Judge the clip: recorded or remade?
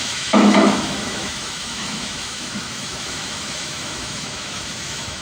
remade